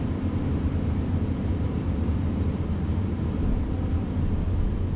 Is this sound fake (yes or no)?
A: yes